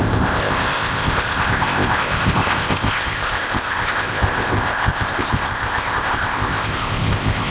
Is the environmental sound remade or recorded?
remade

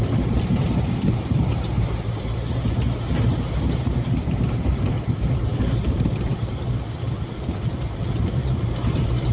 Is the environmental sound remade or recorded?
remade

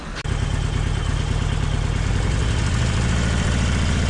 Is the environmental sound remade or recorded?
recorded